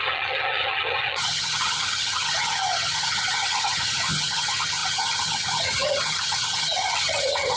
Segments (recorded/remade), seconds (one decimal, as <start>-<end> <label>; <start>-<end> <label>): 0.0-7.6 remade